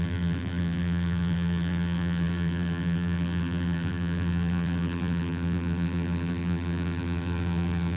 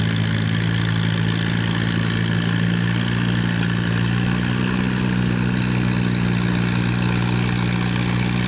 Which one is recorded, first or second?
second